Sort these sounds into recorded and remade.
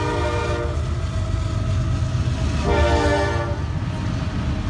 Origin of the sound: recorded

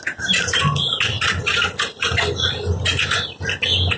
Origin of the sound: recorded